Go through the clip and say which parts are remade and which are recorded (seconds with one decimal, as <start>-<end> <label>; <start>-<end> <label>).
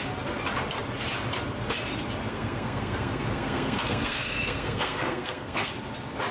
0.0-2.3 recorded; 2.3-5.7 remade; 5.7-6.3 recorded